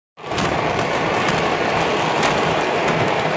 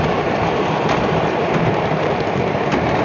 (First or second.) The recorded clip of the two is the first